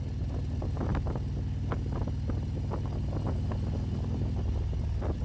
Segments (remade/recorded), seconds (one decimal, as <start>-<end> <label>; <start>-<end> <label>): 0.0-5.2 recorded